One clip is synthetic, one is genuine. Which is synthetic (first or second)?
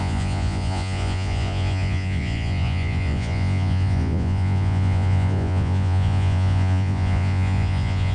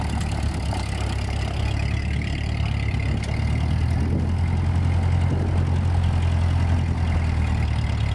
first